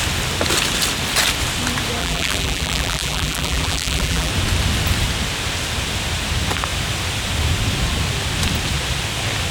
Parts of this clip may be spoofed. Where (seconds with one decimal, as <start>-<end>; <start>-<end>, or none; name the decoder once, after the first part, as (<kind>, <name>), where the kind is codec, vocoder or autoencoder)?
2.0-4.3 (vocoder, BigVGAN v2)